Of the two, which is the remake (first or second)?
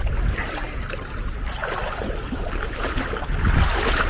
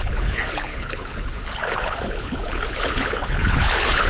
second